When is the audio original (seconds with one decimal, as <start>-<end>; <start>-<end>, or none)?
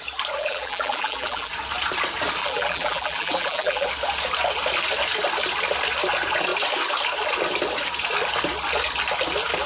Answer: 0.0-0.4; 1.5-2.4; 3.9-9.7